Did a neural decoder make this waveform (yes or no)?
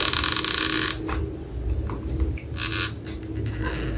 no